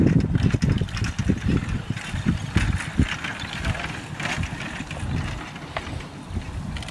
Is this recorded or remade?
recorded